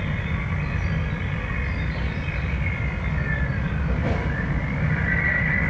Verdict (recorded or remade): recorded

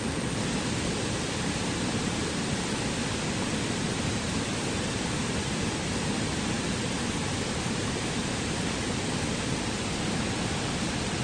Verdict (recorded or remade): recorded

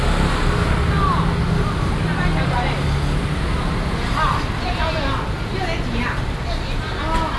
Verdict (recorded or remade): recorded